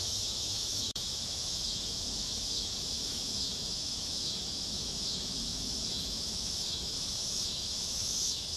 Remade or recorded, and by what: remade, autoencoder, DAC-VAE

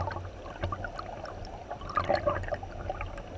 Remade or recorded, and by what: recorded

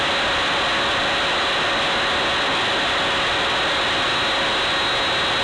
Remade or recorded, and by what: recorded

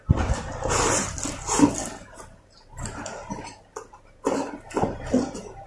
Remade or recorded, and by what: recorded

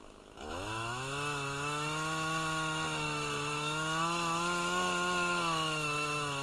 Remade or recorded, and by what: remade, autoencoder, DAC-VAE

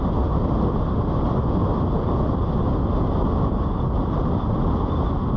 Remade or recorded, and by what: recorded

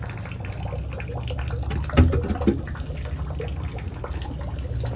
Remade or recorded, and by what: recorded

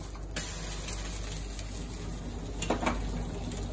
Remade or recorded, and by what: recorded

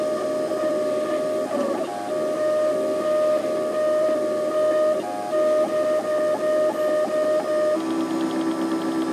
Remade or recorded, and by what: recorded